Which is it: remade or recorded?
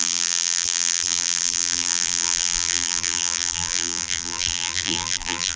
remade